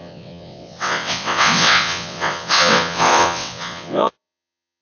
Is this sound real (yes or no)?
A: no